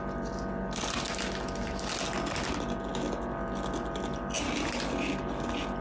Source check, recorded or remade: recorded